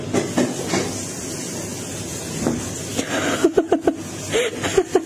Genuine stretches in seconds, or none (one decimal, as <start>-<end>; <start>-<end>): 0.0-5.1